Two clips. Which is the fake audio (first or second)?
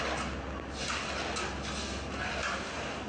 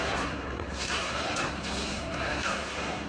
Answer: second